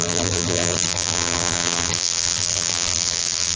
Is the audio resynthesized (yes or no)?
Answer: yes